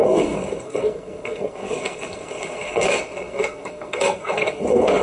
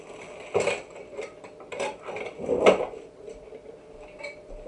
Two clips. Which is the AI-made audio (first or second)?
first